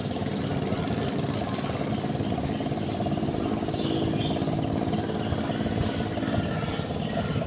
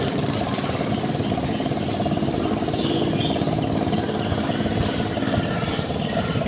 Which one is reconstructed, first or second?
second